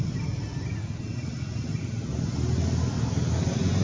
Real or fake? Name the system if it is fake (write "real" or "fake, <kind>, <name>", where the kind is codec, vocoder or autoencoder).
real